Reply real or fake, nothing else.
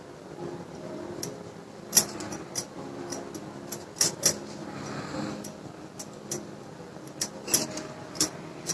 real